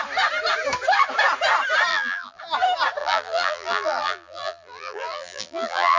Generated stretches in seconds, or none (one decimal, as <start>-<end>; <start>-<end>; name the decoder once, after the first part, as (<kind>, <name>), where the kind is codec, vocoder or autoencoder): 1.9-2.4 (vocoder, BigVGAN v2); 3.0-6.0